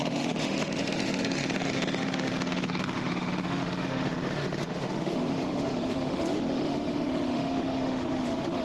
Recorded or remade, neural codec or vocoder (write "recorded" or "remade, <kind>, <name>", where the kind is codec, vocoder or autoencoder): remade, autoencoder, DAC-VAE